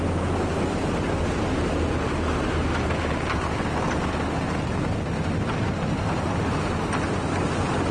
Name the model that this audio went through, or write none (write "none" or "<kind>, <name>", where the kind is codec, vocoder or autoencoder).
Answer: none